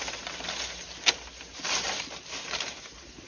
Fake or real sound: real